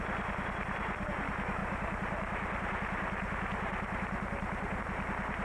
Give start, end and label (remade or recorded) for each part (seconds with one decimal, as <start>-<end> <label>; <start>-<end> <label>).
0.0-1.6 recorded; 1.6-4.8 remade; 4.8-5.4 recorded